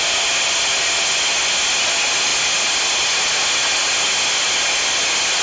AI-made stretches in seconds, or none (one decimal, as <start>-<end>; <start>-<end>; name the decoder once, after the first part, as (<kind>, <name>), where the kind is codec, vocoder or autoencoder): none